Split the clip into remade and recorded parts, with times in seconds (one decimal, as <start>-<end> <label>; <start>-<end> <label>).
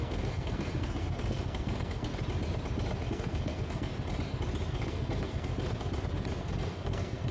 0.0-2.1 remade; 2.1-3.1 recorded; 3.1-3.9 remade; 3.9-4.7 recorded; 4.7-5.5 remade; 5.5-6.4 recorded; 6.4-7.3 remade